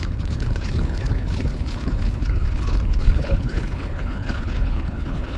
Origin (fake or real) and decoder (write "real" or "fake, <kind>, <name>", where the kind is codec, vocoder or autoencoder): fake, codec, HILCodec